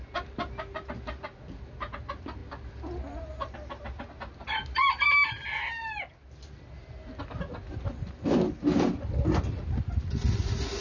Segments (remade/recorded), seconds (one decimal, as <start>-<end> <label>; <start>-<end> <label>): 0.0-10.8 recorded

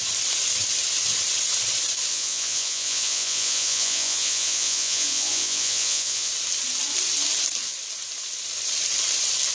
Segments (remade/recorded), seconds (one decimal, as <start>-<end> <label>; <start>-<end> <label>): 0.0-2.1 recorded; 2.1-6.3 remade; 6.3-9.5 recorded

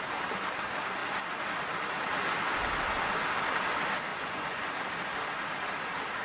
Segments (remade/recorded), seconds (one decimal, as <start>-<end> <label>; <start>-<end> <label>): 0.0-4.1 recorded; 4.1-4.7 remade; 4.7-6.2 recorded

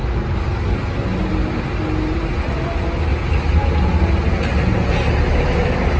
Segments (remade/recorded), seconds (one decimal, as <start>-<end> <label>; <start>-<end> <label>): 0.0-6.0 recorded

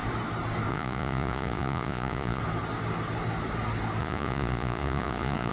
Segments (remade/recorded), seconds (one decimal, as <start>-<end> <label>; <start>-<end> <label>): 0.0-0.7 recorded; 0.7-2.4 remade; 2.4-4.0 recorded; 4.0-5.5 remade

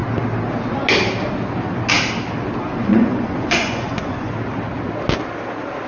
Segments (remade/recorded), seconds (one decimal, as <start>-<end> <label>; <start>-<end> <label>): 0.0-2.7 recorded; 2.7-4.3 remade; 4.3-5.9 recorded

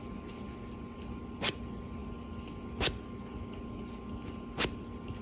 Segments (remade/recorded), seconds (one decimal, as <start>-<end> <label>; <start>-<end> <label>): 0.0-5.2 recorded